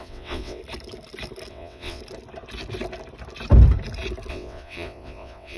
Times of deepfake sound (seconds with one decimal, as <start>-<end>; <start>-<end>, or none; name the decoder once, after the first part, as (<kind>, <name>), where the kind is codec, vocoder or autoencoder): 0.0-0.6 (vocoder, WaveNeXt); 1.5-2.0; 4.3-5.6